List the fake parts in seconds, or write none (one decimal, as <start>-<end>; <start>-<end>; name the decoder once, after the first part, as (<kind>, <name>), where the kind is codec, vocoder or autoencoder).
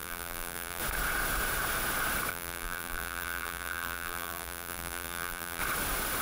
0.0-0.8 (vocoder, BigVGAN v2); 2.3-5.6